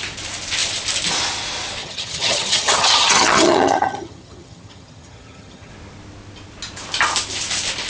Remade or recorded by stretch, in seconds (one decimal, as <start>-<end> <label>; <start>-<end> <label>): 0.0-1.8 recorded; 1.8-5.7 remade; 5.7-7.9 recorded